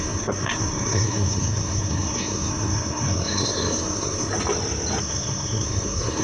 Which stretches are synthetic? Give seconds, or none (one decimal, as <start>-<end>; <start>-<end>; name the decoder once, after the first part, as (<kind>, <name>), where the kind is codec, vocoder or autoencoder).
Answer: 0.0-4.3 (codec, SNAC); 5.0-6.2